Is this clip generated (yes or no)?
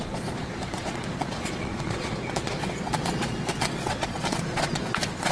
yes